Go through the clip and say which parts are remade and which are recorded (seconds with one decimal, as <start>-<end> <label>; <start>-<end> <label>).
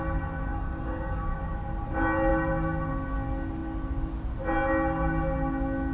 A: 0.0-0.5 recorded; 0.5-1.4 remade; 1.4-5.9 recorded